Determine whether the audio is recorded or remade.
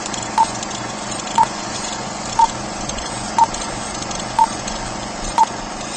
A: remade